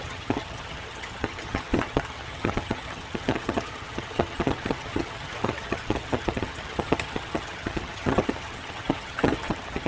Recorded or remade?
remade